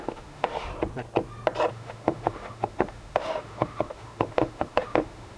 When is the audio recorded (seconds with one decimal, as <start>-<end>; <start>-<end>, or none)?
0.7-1.7